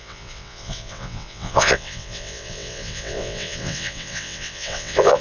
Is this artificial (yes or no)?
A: yes